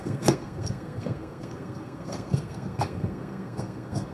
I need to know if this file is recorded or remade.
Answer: remade